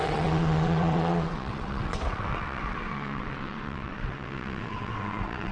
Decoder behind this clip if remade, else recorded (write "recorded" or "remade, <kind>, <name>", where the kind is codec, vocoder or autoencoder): remade, vocoder, WaveNeXt